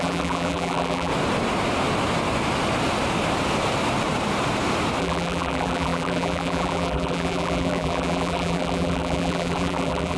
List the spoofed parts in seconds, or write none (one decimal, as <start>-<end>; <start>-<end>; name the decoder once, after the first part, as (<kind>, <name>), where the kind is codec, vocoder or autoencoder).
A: 0.0-1.1 (vocoder, BigVGAN v2); 5.0-10.2